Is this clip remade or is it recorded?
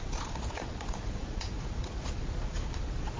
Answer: remade